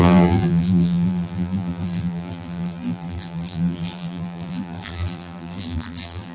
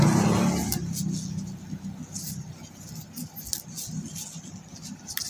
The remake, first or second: first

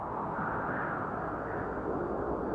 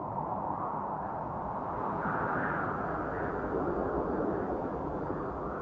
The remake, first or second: second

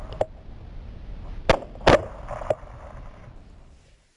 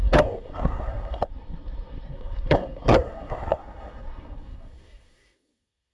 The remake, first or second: second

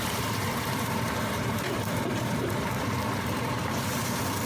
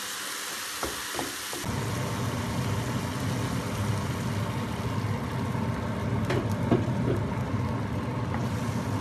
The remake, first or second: first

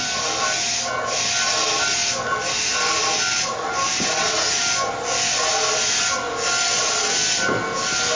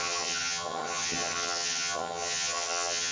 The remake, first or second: second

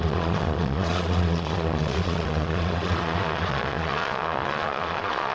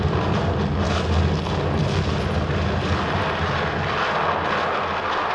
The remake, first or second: first